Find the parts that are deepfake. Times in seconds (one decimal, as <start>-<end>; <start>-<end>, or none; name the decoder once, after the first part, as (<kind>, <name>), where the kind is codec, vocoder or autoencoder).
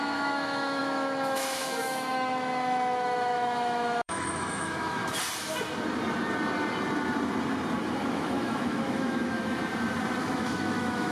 0.0-5.0 (autoencoder, DAC-VAE); 8.1-9.6; 10.2-11.1